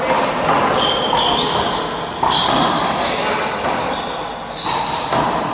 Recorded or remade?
recorded